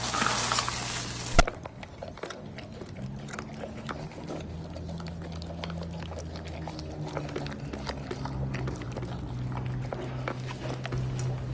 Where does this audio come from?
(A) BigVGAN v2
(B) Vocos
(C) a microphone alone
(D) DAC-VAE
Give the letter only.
C